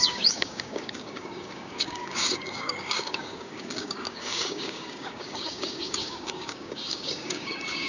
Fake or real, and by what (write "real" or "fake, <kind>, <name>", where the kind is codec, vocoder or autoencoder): fake, codec, DAC